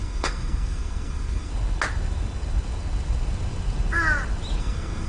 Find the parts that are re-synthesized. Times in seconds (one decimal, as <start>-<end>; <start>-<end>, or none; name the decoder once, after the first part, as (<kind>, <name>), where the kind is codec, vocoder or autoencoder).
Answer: 0.0-1.5 (codec, SNAC); 4.6-5.1